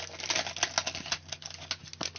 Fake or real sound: real